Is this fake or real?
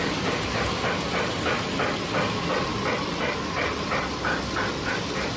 real